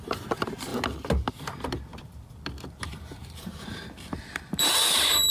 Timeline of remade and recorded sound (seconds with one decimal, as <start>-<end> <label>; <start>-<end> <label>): 0.0-1.9 recorded; 1.9-5.3 remade